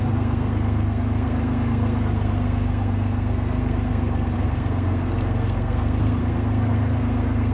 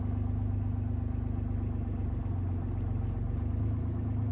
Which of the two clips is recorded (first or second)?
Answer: second